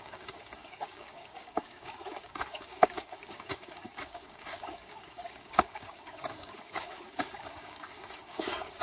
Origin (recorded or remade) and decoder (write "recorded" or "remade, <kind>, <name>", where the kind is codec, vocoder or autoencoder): remade, codec, DAC